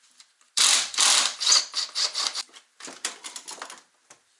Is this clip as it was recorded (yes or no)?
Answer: no